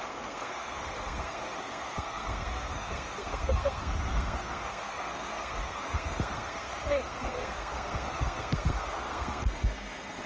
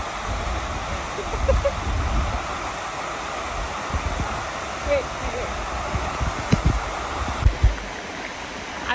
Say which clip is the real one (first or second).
second